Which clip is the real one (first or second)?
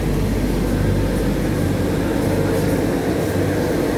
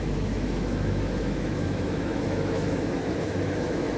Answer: first